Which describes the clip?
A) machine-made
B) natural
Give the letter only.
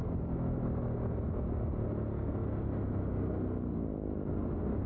B